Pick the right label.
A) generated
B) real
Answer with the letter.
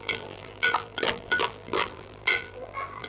A